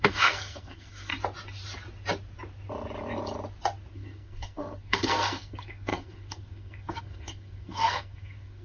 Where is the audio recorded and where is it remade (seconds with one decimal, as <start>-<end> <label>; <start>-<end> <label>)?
0.0-1.1 remade; 1.1-3.9 recorded; 3.9-8.6 remade